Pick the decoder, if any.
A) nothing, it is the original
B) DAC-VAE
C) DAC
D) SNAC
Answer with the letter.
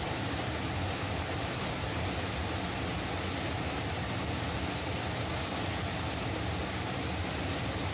A